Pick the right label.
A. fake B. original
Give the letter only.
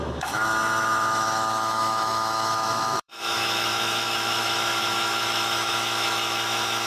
A